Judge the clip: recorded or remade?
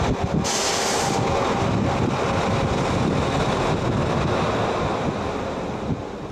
recorded